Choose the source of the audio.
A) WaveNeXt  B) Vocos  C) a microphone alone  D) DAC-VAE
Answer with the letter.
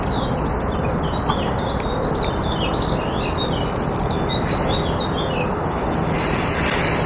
C